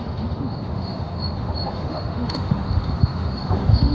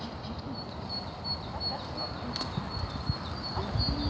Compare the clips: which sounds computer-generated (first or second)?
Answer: first